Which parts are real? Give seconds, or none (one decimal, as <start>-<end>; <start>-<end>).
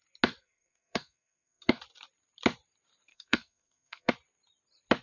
0.0-0.4; 1.8-3.1; 4.1-5.0